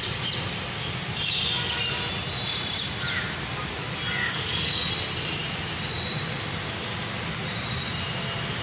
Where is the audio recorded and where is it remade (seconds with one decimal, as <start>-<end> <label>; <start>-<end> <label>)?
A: 0.0-4.2 recorded; 4.2-4.9 remade; 4.9-8.6 recorded